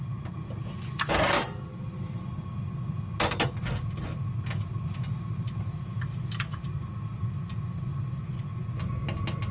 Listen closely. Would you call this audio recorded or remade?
recorded